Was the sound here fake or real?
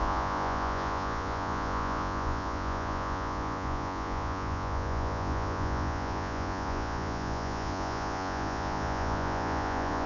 fake